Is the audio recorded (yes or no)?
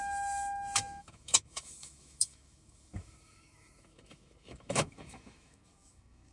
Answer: no